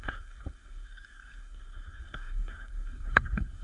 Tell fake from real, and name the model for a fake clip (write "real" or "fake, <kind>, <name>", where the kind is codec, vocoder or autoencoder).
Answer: fake, codec, SNAC